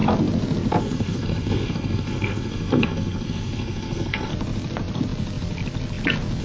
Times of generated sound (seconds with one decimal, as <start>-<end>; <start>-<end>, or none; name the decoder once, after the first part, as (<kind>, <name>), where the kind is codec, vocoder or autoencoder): 0.8-4.3 (codec, SNAC)